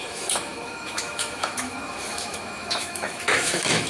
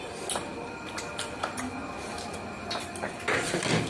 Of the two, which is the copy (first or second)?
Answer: first